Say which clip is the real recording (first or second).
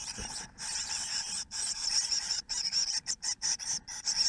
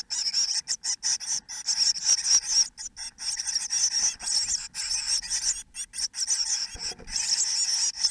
second